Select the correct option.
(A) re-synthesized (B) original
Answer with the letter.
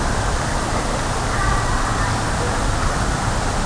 B